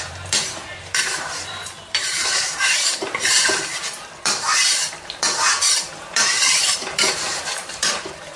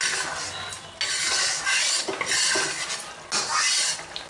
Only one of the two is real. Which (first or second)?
second